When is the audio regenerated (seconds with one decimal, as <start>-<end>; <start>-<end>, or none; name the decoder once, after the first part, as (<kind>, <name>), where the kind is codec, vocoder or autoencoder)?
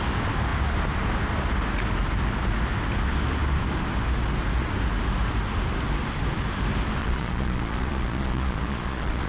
7.0-9.3 (vocoder, Vocos)